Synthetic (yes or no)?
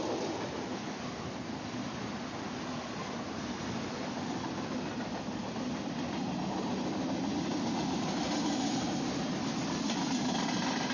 no